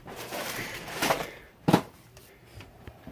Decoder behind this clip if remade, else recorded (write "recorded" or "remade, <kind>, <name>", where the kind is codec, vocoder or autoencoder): remade, vocoder, BigVGAN v2